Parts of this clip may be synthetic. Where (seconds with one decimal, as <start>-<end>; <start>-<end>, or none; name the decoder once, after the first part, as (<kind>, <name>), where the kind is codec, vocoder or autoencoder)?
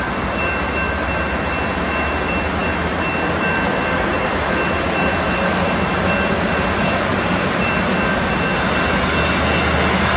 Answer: 7.1-7.7 (vocoder, BigVGAN v2)